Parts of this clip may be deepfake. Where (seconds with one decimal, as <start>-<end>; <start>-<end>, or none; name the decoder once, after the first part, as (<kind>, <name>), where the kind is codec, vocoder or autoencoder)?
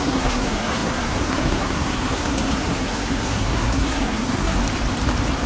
0.0-4.6 (codec, SNAC)